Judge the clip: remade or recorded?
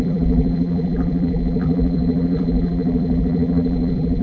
remade